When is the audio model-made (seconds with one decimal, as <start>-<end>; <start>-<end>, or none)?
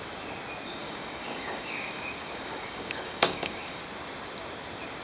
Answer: 0.8-3.8